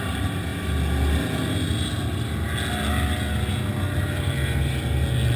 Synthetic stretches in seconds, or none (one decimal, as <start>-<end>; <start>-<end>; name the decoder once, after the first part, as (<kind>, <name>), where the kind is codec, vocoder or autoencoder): none